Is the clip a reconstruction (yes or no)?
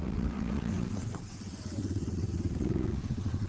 yes